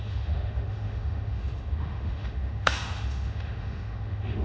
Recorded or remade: remade